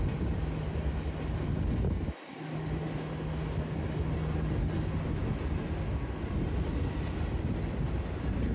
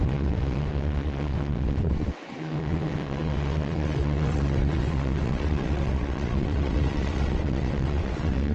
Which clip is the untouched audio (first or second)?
first